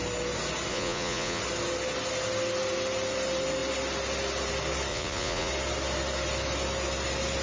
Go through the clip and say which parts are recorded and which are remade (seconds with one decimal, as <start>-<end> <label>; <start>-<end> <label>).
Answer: 0.0-0.7 recorded; 0.7-1.4 remade; 1.4-4.9 recorded; 4.9-5.5 remade; 5.5-7.4 recorded